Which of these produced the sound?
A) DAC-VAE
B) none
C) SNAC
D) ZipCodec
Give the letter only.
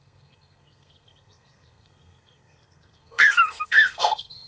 C